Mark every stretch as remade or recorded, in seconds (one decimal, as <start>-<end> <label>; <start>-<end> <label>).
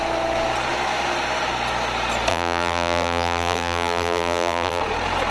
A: 0.0-2.3 recorded; 2.3-4.8 remade; 4.8-5.3 recorded